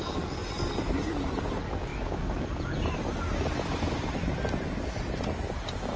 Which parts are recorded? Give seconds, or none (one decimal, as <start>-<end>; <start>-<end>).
0.0-6.0